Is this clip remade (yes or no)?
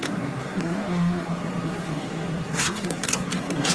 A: yes